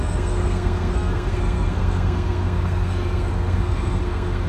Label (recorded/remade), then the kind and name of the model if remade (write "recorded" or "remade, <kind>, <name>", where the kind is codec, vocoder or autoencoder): remade, codec, SNAC